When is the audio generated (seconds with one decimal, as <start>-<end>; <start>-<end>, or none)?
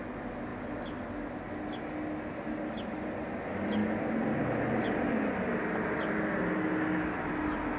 none